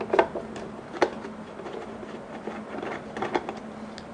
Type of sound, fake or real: real